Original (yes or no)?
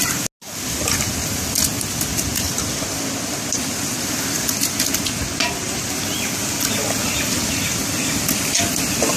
yes